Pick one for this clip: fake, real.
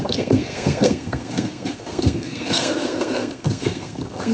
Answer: fake